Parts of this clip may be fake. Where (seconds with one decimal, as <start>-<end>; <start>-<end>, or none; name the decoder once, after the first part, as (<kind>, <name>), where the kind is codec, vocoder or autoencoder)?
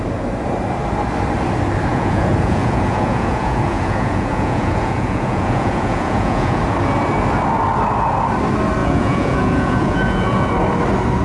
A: 1.9-6.6 (vocoder, Vocos); 8.8-10.5